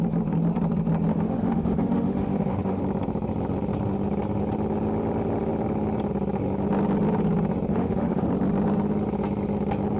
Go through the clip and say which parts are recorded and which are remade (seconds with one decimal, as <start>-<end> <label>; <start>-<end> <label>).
0.0-1.1 recorded; 1.1-2.8 remade; 2.8-7.7 recorded; 7.7-8.3 remade; 8.3-10.0 recorded